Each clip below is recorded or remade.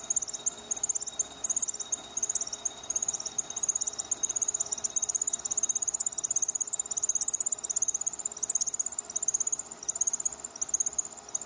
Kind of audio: recorded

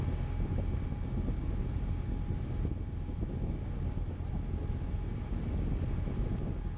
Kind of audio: recorded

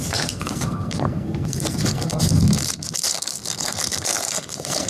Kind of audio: remade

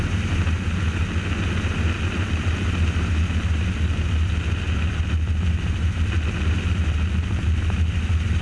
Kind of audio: recorded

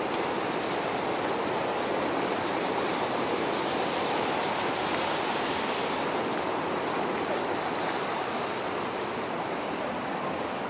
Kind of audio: recorded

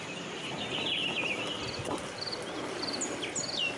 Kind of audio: recorded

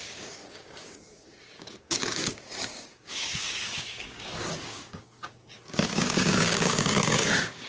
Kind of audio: remade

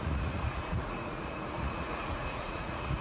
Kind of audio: remade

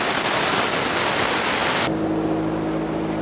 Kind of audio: recorded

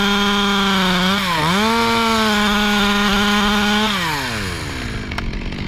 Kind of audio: recorded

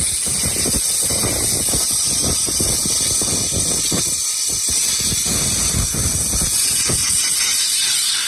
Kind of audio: recorded